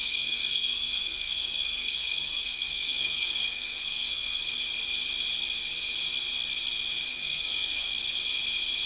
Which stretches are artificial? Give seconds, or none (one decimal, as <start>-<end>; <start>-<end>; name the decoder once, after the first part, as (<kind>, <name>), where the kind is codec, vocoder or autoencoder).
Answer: 0.0-4.4 (codec, SNAC); 7.1-7.9